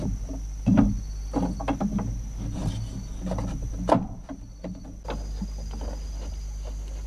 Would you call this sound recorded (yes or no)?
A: yes